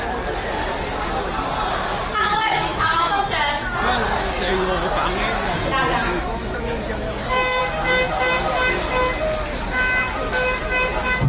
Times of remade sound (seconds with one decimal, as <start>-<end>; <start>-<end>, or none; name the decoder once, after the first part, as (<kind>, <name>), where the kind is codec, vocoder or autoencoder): 2.1-3.2 (autoencoder, DAC-VAE); 6.0-7.6